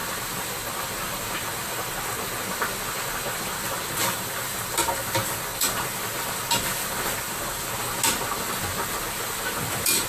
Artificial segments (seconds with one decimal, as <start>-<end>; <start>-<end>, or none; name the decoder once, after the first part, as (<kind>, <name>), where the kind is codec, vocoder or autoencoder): none